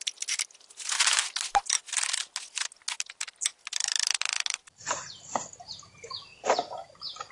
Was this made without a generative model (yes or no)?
yes